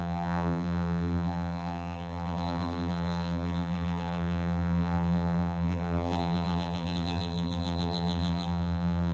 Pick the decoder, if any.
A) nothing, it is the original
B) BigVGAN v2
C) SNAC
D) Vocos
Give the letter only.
B